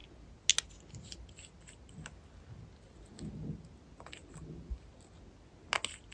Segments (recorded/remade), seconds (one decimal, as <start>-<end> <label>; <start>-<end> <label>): 0.0-6.1 recorded